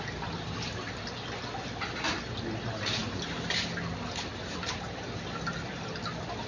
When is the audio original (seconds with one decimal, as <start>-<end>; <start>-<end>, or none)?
0.0-6.5